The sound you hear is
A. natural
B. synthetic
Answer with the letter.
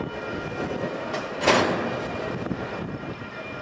A